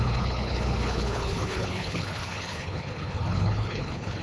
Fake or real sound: fake